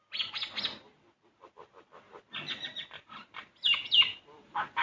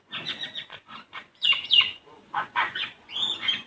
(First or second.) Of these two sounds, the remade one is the second